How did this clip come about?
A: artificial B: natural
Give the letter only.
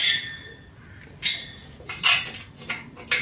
B